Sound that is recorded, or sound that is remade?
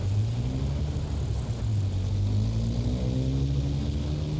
recorded